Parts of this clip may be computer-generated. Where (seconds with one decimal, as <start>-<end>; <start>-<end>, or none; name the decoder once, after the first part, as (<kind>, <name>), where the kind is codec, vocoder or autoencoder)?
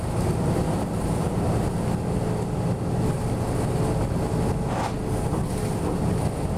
0.6-1.7 (vocoder, BigVGAN v2)